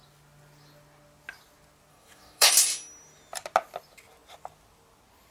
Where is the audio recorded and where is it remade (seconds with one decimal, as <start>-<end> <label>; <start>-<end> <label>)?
0.0-1.9 recorded; 1.9-2.5 remade; 2.5-5.3 recorded